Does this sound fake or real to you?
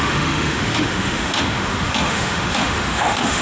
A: fake